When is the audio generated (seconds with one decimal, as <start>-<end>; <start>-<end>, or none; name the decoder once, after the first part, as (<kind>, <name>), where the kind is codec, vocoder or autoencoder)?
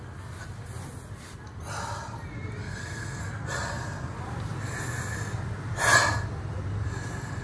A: 2.6-3.2 (codec, SNAC)